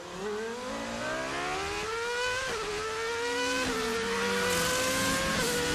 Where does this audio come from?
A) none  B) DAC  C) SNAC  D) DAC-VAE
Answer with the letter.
A